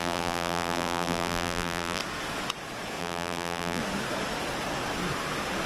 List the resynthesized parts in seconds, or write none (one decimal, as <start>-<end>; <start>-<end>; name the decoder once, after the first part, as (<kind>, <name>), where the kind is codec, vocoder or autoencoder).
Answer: 0.0-2.0 (vocoder, BigVGAN v2); 3.0-3.8